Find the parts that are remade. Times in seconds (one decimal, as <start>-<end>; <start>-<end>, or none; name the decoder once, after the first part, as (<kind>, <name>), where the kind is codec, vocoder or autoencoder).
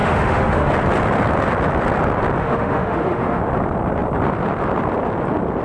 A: 0.0-0.7 (autoencoder, DAC-VAE); 2.4-3.4